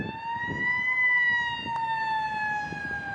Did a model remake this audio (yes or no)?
no